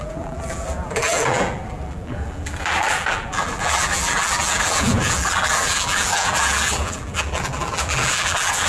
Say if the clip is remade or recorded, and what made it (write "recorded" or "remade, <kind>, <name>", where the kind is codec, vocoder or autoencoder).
remade, vocoder, BigVGAN v2